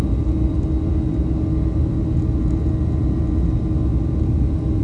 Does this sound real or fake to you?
real